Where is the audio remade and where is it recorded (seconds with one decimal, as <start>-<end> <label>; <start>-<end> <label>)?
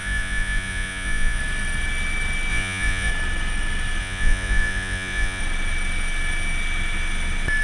0.0-1.4 remade; 1.4-2.5 recorded; 2.5-3.1 remade; 3.1-4.0 recorded; 4.0-5.4 remade; 5.4-7.6 recorded